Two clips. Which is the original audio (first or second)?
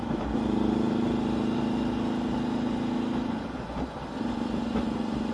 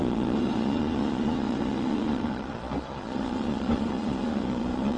first